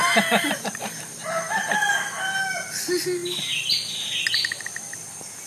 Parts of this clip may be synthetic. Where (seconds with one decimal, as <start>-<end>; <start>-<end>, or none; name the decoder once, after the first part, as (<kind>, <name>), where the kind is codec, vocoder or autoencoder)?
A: 0.0-1.5 (vocoder, BigVGAN v2)